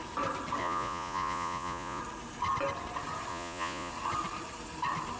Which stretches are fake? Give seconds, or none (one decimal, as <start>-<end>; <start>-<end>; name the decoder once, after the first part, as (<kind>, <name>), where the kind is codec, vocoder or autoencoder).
0.6-2.0 (vocoder, Vocos); 3.3-3.9